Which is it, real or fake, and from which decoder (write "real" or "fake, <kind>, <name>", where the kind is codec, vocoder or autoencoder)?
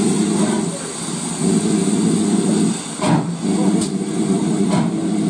real